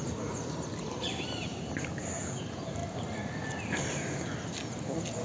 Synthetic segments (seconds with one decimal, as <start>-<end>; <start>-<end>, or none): none